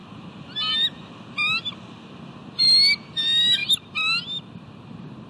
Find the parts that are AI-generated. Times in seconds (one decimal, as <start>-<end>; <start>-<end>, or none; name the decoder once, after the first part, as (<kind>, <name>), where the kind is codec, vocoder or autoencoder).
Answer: none